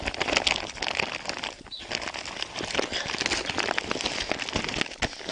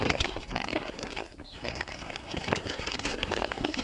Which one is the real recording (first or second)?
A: first